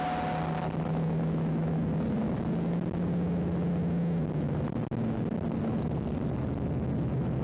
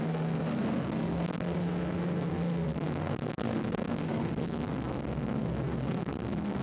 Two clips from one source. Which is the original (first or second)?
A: first